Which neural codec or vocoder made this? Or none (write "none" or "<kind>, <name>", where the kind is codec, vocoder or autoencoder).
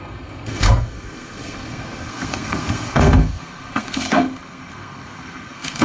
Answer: codec, SNAC